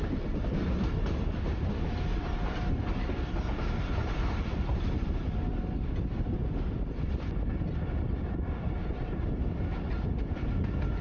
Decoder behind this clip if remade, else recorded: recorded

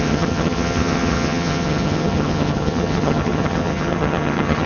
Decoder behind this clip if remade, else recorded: remade, vocoder, HiFi-GAN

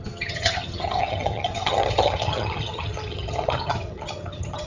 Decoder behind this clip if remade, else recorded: remade, vocoder, HiFi-GAN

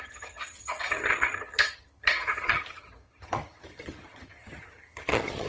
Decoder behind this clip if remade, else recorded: remade, vocoder, HiFi-GAN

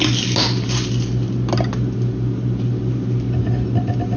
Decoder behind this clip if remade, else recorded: recorded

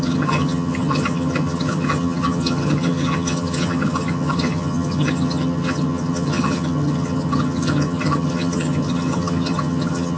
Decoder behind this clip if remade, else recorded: remade, vocoder, HiFi-GAN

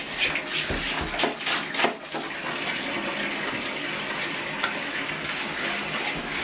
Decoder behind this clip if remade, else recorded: recorded